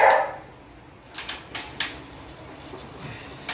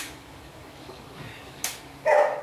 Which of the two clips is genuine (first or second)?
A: first